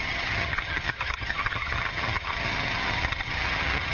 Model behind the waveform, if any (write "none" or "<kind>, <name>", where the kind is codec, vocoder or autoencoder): vocoder, HiFi-GAN